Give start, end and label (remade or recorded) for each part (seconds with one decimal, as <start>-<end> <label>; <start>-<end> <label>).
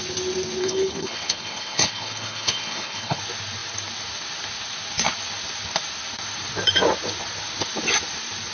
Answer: 0.0-0.6 recorded; 0.6-3.2 remade; 3.2-8.5 recorded